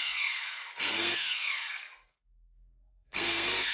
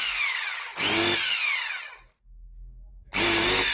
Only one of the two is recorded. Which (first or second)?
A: second